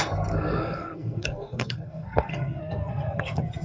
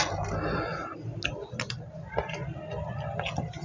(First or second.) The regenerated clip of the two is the first